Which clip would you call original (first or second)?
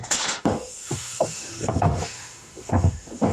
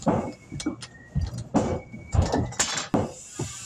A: second